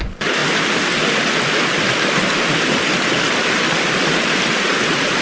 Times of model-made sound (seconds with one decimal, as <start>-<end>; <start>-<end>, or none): none